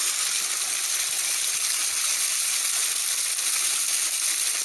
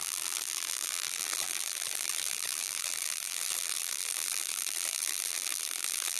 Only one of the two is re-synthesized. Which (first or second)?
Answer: second